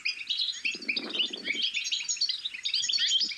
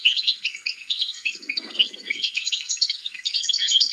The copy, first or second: second